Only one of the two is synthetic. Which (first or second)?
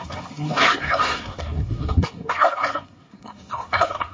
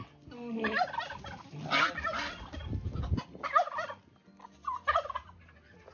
first